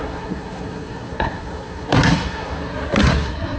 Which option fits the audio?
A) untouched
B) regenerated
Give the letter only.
B